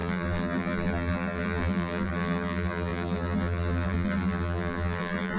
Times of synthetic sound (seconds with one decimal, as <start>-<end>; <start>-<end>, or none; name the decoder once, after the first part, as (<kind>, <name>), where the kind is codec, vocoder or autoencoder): 0.0-5.4 (vocoder, BigVGAN v2)